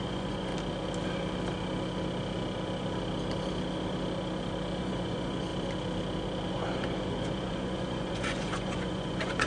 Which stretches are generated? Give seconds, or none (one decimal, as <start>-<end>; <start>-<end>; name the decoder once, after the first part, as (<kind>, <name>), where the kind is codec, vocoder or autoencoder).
0.0-0.5 (vocoder, Vocos); 4.8-5.5; 6.5-9.5

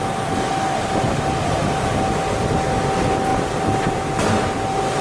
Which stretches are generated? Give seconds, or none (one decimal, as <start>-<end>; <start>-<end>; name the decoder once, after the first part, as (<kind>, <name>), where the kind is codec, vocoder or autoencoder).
none

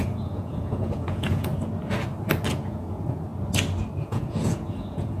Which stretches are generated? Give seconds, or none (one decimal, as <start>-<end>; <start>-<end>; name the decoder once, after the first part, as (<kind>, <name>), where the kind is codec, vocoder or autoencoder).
0.0-1.5 (vocoder, Vocos); 2.5-3.3; 4.0-5.2

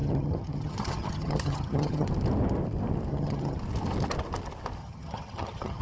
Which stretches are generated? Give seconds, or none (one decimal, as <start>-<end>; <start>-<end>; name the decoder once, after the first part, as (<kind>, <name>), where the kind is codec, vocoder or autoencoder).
0.0-2.1 (vocoder, HiFi-GAN); 3.1-3.6; 4.8-5.8

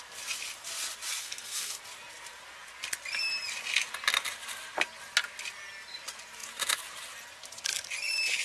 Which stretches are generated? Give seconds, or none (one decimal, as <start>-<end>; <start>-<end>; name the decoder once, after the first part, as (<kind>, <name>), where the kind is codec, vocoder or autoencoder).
1.2-1.8 (codec, SNAC)

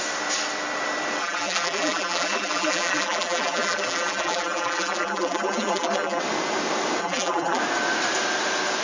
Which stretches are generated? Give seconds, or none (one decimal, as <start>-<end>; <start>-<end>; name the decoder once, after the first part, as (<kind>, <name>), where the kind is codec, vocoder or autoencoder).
1.2-6.2 (vocoder, BigVGAN v2); 7.0-7.6

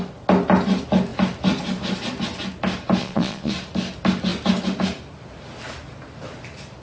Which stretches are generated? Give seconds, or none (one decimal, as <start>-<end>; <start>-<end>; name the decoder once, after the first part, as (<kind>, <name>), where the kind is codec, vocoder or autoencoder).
3.0-3.5 (vocoder, Vocos)

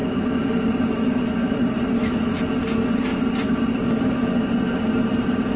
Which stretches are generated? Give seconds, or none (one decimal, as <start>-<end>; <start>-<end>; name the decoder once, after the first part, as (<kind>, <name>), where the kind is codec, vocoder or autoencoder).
none